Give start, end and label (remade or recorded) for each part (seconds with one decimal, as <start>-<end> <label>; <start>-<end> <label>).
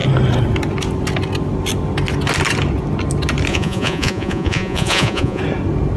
0.0-3.5 recorded; 3.5-5.4 remade; 5.4-6.0 recorded